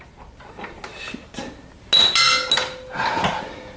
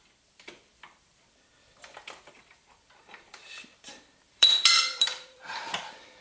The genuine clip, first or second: first